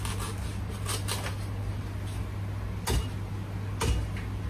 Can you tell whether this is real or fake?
real